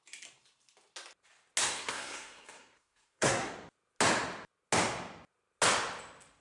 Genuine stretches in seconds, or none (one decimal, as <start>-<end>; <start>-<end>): 0.0-1.6; 3.5-6.4

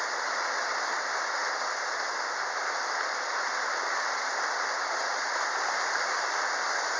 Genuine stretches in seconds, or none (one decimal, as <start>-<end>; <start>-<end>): 0.0-7.0

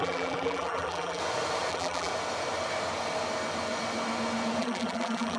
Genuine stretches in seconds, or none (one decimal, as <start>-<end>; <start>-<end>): 1.2-1.7; 2.1-4.6

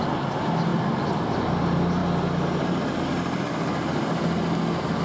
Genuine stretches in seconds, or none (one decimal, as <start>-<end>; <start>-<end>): 0.0-5.0

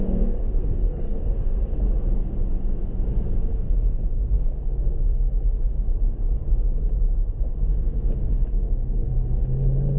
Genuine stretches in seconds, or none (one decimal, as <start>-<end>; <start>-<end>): 1.8-3.5; 5.7-8.3; 9.1-10.0